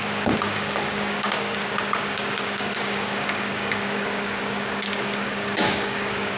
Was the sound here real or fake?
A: fake